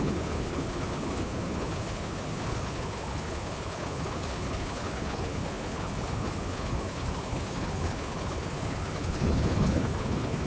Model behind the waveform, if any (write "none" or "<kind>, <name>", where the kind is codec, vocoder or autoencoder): codec, HILCodec